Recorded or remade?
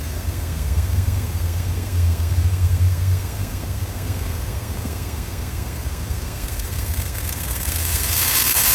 remade